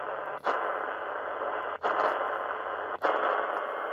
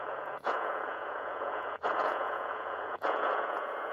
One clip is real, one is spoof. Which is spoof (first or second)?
second